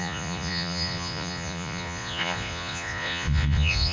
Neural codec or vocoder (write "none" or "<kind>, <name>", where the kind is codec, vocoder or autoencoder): vocoder, Vocos